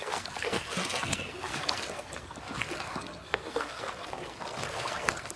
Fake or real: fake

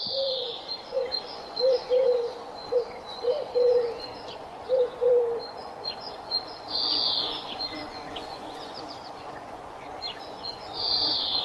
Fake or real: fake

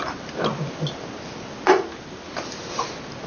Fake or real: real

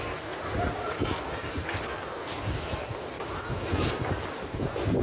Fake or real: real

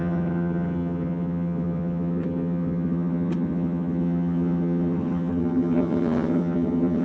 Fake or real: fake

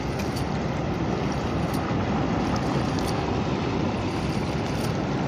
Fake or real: real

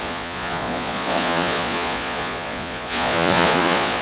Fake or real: fake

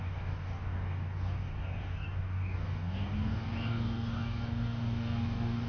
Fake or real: fake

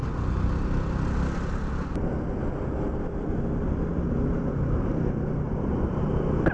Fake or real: real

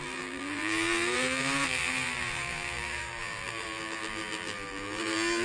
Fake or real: fake